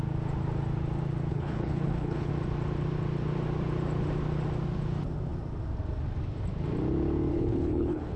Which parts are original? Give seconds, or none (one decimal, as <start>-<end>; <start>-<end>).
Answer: 0.0-1.3; 2.3-7.3